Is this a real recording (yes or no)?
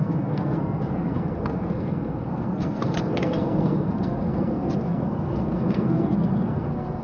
no